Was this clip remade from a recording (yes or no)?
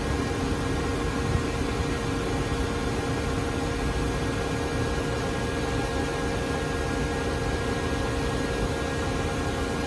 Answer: no